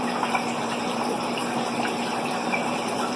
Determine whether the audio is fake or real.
fake